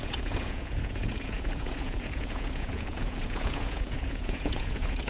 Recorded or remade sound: remade